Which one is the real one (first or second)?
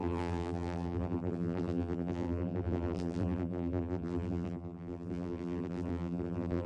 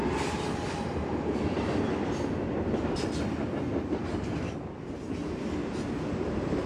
second